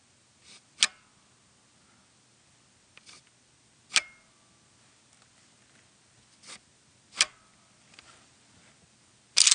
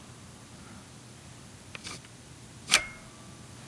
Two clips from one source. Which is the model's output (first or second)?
second